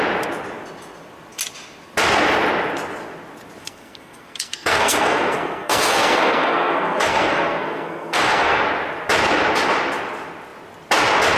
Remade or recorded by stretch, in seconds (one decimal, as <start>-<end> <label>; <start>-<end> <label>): 0.0-3.6 recorded; 3.6-8.6 remade; 8.6-11.4 recorded

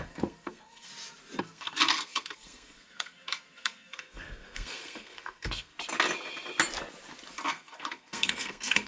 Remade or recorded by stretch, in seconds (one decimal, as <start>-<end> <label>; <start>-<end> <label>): 0.0-0.9 remade; 0.9-1.4 recorded; 1.4-5.7 remade; 5.7-7.5 recorded; 7.5-8.9 remade

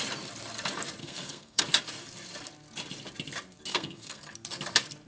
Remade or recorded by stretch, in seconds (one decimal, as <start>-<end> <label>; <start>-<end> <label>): 0.0-1.0 recorded; 1.0-1.6 remade; 1.6-3.7 recorded; 3.7-4.2 remade; 4.2-5.1 recorded